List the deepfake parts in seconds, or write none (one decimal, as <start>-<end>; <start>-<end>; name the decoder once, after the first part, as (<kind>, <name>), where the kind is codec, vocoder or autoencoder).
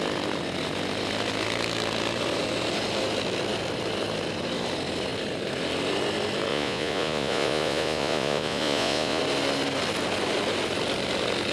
6.5-9.2 (vocoder, Vocos)